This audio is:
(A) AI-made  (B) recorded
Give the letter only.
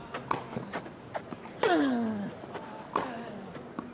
B